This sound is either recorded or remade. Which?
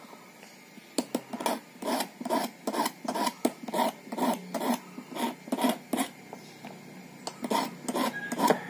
recorded